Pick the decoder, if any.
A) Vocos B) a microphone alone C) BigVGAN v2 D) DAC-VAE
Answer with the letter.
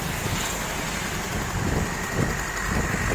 B